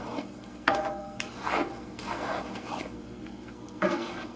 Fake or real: fake